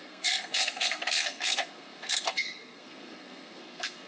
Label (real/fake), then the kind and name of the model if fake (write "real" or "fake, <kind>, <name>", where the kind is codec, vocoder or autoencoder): fake, codec, SNAC